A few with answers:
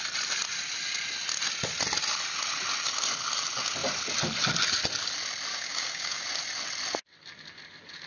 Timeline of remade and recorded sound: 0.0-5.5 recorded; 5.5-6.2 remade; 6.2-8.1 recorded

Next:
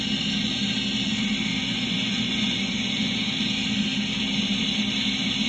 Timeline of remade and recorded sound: 0.0-1.5 recorded; 1.5-3.3 remade; 3.3-5.5 recorded

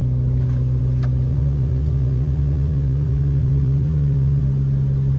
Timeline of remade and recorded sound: 0.0-1.3 recorded; 1.3-4.4 remade; 4.4-5.2 recorded

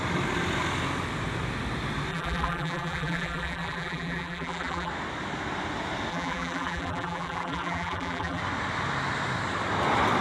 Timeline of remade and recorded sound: 0.0-2.1 recorded; 2.1-4.9 remade; 4.9-6.1 recorded; 6.1-8.4 remade; 8.4-10.2 recorded